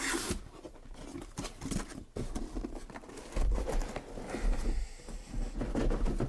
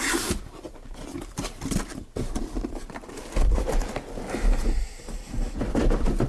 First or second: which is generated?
second